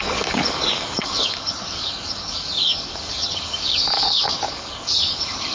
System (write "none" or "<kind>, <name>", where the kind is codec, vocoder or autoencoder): codec, DAC